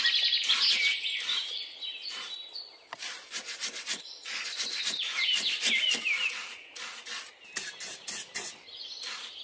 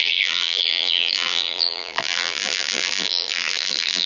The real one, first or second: first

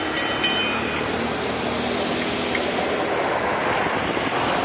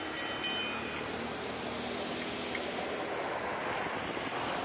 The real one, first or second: second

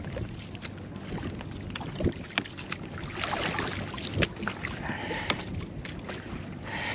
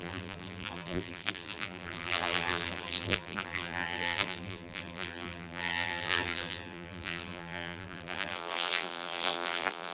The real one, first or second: first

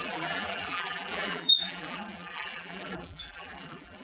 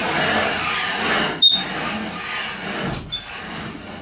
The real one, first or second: second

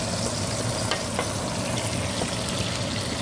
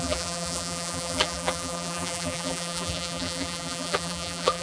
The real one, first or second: first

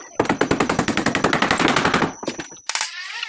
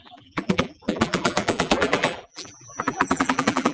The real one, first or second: first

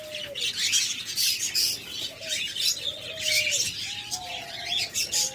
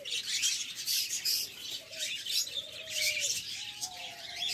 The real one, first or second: first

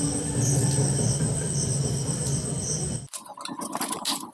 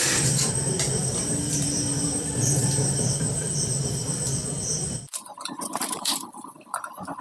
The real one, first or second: first